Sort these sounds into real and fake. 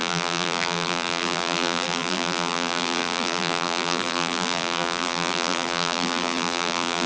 fake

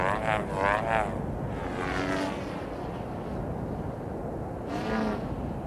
real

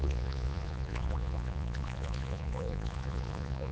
fake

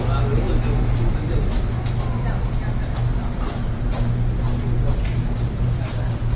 real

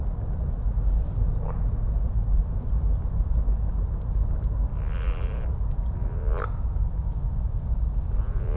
real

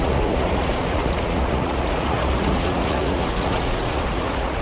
fake